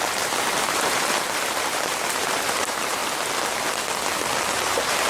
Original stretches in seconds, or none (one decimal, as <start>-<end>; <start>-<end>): 3.0-4.5